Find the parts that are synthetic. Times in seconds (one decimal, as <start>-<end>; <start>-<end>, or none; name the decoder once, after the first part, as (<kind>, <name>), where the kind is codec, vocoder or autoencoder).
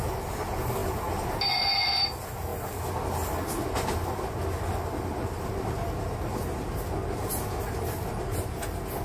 none